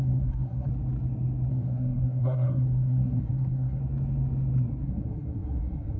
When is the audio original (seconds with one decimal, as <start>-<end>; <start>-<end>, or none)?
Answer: 0.7-1.5; 3.8-4.8